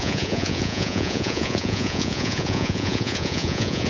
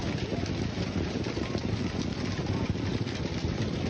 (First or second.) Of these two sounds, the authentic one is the second